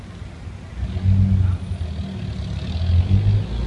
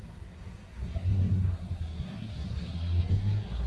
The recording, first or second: first